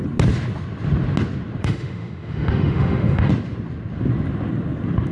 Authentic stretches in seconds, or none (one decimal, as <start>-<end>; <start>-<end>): 0.0-1.6; 3.3-5.1

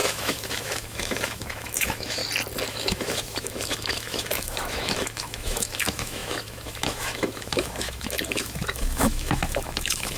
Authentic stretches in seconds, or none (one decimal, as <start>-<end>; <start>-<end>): 2.2-2.7

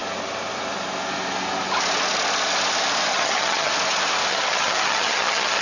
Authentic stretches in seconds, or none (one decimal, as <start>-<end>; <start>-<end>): 0.0-3.1; 3.7-4.3

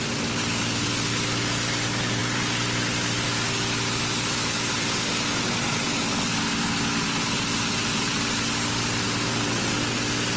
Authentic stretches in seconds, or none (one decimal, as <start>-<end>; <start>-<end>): 0.0-10.4

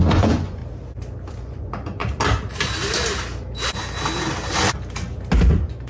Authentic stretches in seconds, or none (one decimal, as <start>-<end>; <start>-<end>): 0.6-1.3; 2.0-5.5